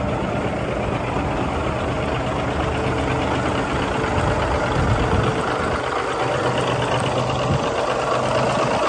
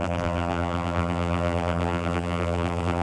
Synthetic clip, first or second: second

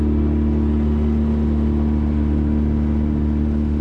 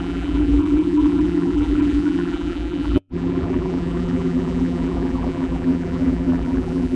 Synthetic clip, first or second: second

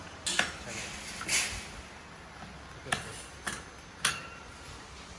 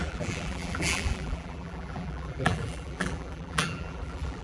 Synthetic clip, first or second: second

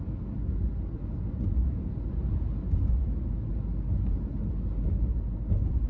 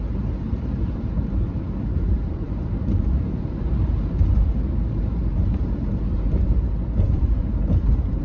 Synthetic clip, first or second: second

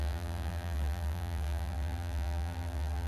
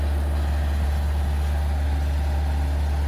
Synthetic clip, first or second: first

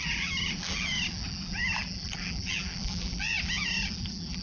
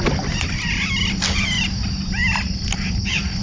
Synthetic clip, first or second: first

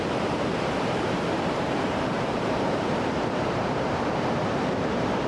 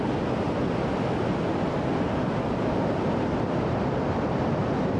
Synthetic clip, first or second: first